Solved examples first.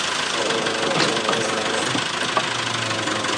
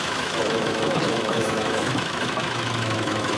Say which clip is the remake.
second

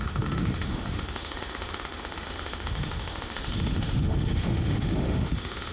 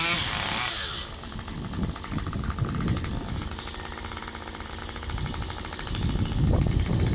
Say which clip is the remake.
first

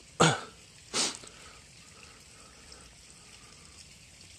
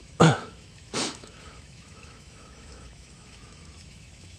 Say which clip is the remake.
second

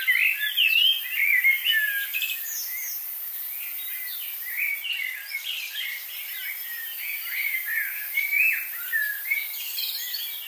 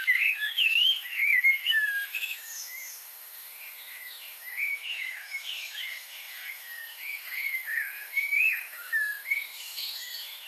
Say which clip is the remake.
second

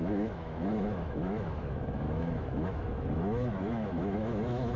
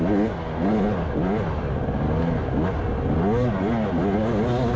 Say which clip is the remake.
first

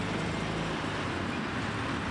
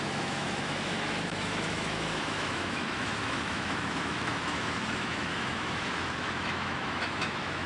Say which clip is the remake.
second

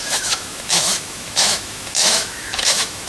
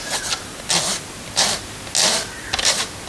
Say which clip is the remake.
first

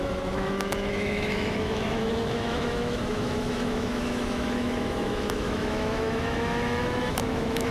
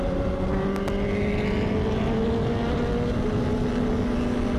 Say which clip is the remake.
first